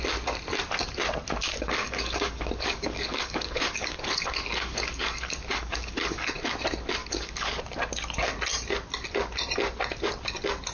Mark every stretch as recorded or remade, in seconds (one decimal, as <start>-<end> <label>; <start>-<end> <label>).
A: 0.0-1.4 recorded; 1.4-6.4 remade; 6.4-7.0 recorded; 7.0-7.6 remade; 7.6-10.7 recorded